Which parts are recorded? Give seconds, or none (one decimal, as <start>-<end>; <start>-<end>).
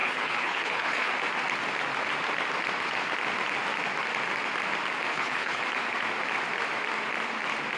1.1-5.1; 5.6-7.8